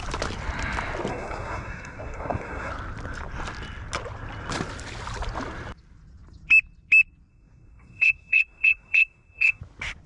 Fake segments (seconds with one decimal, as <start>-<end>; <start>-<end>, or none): 1.1-2.7; 7.3-9.6